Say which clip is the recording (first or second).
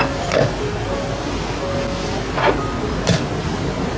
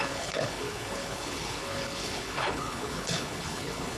first